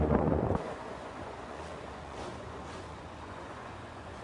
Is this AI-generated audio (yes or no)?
yes